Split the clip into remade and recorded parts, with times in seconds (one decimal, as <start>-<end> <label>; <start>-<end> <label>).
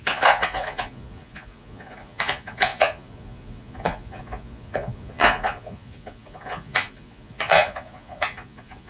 0.0-8.9 remade